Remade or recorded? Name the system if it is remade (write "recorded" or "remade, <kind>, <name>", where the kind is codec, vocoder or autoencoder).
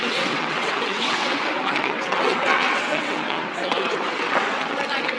remade, vocoder, WaveNeXt